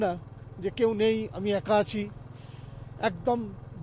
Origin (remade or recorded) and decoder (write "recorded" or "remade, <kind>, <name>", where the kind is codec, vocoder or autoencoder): recorded